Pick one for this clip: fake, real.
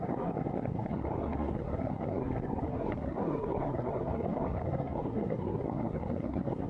fake